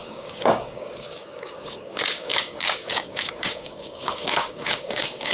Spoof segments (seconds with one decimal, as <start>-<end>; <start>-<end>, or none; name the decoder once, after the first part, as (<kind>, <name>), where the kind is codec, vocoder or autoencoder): 0.0-5.3 (codec, DAC)

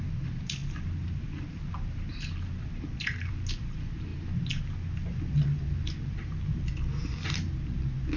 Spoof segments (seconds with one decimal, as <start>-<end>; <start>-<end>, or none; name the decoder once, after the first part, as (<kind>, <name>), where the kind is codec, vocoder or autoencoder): none

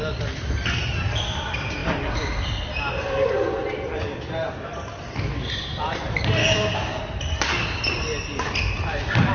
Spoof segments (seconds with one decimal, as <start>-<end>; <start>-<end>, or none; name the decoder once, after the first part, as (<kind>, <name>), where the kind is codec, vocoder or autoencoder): 6.4-7.0 (codec, DAC)

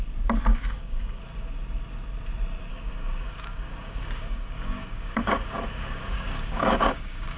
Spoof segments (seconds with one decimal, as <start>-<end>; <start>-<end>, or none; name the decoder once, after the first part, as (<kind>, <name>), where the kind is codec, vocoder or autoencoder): 0.5-1.2 (codec, DAC); 2.7-7.4

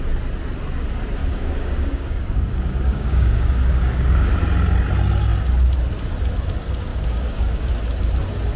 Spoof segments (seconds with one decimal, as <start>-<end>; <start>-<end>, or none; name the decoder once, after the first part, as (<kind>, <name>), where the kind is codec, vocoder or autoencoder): 1.2-4.3 (codec, DAC); 6.9-7.7

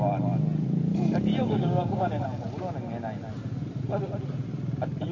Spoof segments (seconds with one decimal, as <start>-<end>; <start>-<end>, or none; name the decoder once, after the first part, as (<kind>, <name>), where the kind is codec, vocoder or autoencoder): 1.4-2.2 (codec, DAC)

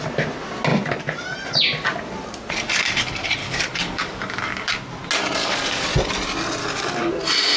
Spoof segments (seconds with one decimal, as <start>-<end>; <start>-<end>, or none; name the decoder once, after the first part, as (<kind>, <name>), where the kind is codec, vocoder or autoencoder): 3.4-4.7 (codec, DAC); 5.4-5.9; 6.6-7.1